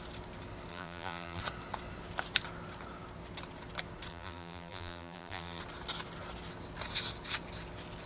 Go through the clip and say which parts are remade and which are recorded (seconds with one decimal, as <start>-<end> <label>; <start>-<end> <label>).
0.0-0.7 recorded; 0.7-1.4 remade; 1.4-4.1 recorded; 4.1-5.6 remade; 5.6-8.1 recorded